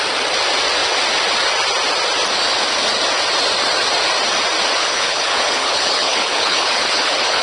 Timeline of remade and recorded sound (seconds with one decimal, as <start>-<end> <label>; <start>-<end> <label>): 0.0-4.8 recorded; 4.8-7.4 remade